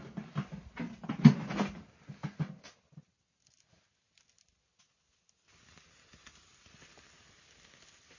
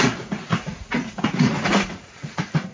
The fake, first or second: second